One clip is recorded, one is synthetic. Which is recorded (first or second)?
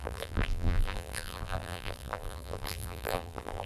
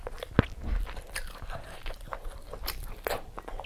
second